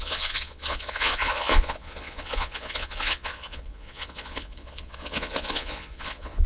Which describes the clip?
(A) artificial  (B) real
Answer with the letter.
A